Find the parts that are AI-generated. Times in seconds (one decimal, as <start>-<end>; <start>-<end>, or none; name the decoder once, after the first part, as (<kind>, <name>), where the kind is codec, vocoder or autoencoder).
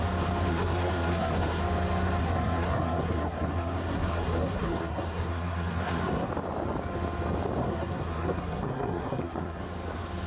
0.5-1.6 (codec, SNAC); 2.2-6.3; 7.6-9.6